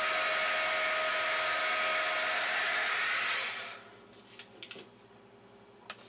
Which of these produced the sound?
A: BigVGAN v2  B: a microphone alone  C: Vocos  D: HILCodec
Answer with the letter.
B